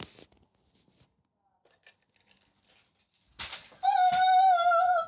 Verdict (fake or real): real